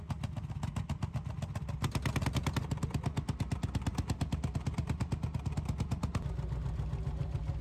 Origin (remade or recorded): recorded